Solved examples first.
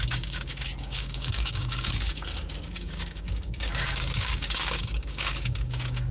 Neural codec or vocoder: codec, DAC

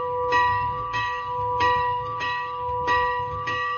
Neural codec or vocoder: codec, DAC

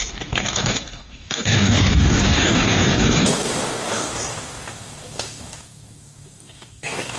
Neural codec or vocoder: codec, DAC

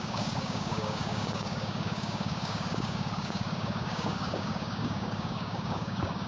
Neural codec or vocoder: codec, DAC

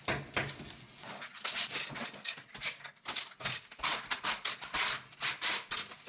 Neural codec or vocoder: none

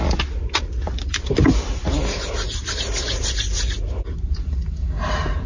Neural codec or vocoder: none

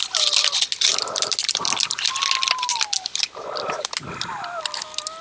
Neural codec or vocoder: none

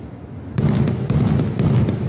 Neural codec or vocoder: none